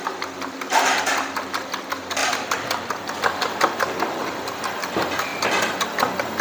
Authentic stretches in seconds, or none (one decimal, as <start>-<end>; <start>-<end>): 5.3-6.4